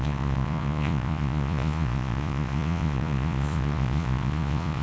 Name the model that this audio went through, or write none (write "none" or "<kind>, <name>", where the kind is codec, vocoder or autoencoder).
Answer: vocoder, Vocos